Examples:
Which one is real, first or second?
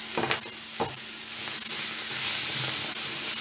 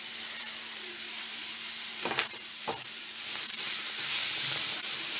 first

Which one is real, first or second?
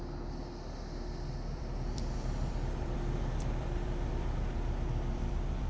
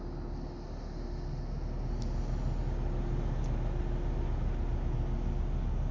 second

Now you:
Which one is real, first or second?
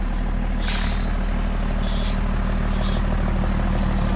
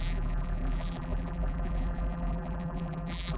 first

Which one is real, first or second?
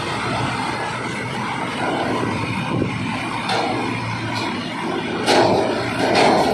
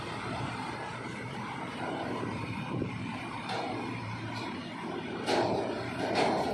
first